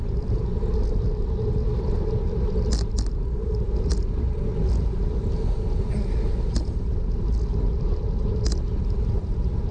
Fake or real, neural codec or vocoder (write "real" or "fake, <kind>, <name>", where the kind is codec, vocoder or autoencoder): real